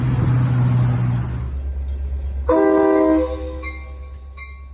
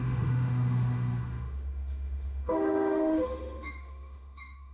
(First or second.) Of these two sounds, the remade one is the second